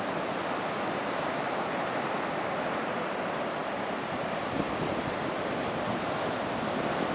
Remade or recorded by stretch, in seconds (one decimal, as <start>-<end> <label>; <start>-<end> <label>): 0.0-7.1 recorded